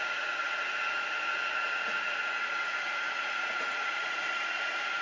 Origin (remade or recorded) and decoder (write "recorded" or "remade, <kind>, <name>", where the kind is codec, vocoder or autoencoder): remade, vocoder, Vocos